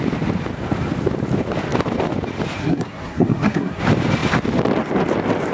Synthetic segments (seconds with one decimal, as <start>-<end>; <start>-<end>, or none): 2.6-3.8